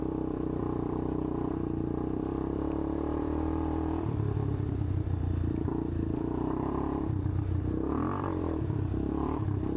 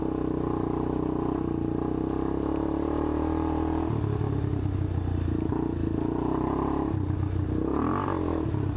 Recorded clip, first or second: second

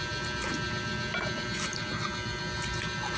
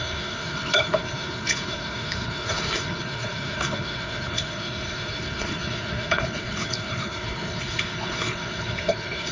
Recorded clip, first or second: first